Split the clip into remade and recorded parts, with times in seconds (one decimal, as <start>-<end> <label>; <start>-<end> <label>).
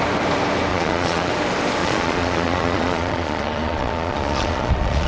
0.0-0.7 recorded; 0.7-1.3 remade; 1.3-1.8 recorded; 1.8-5.1 remade